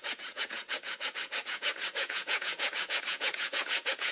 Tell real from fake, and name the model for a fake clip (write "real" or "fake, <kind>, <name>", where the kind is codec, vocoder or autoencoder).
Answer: fake, vocoder, Vocos